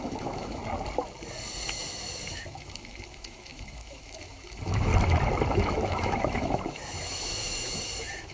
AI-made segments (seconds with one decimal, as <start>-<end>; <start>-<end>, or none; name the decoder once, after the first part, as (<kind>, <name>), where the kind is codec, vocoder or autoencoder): 0.0-0.6 (autoencoder, DAC-VAE); 1.7-4.9; 5.5-8.3